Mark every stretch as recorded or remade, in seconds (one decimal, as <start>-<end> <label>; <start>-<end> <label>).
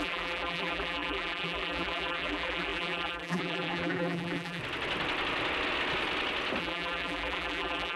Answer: 0.0-4.6 remade; 4.6-6.6 recorded; 6.6-8.0 remade